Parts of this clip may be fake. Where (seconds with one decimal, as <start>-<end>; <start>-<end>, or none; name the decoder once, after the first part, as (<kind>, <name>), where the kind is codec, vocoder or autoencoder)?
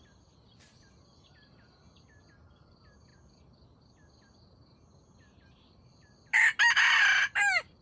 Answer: none